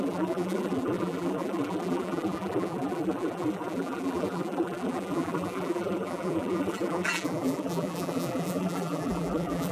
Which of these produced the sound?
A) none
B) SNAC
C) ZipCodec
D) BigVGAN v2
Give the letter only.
D